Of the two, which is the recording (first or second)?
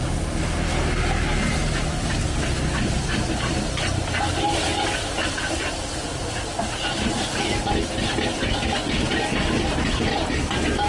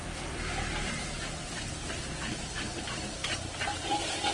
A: first